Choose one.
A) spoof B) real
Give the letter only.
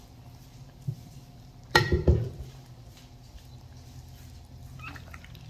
A